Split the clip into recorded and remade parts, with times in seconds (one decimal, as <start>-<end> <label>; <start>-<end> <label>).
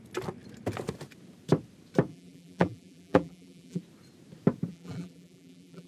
0.0-2.1 recorded; 2.1-3.8 remade; 3.8-4.7 recorded; 4.7-5.9 remade